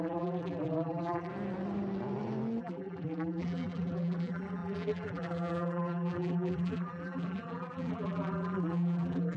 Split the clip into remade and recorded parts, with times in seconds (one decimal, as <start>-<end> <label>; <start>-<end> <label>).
0.0-1.3 remade; 1.3-2.6 recorded; 2.6-9.4 remade